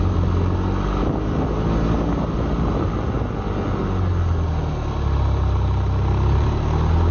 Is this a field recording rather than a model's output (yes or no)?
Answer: yes